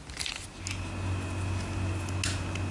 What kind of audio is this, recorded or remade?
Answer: recorded